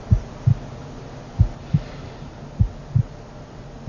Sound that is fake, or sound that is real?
fake